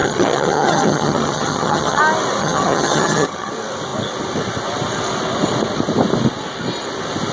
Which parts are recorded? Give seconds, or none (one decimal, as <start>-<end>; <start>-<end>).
2.0-2.4; 3.5-7.3